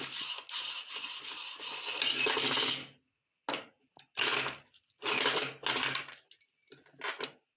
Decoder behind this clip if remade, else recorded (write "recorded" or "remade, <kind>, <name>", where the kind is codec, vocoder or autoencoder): recorded